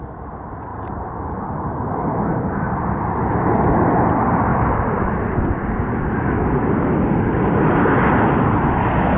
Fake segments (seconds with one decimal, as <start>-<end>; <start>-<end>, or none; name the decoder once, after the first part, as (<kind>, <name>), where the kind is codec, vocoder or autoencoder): 0.7-3.3 (vocoder, BigVGAN v2); 4.5-5.4